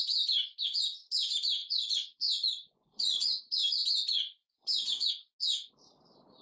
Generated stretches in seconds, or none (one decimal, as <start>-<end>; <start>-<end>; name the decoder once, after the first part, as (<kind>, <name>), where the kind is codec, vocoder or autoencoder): 1.6-3.4 (vocoder, Vocos); 4.4-5.1